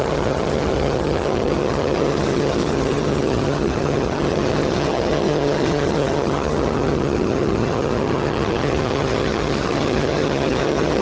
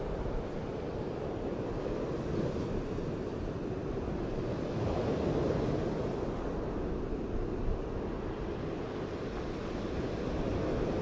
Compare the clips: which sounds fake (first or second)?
first